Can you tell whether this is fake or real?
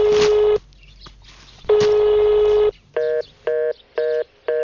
real